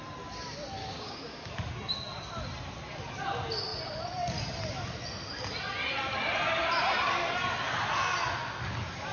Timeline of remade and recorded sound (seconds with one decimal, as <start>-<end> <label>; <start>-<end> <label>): 0.0-0.8 recorded; 0.8-1.5 remade; 1.5-9.1 recorded